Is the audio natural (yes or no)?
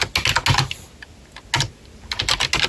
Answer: yes